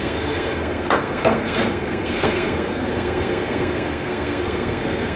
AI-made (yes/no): yes